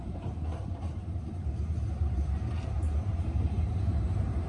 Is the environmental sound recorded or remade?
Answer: remade